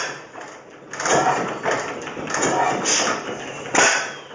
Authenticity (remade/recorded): recorded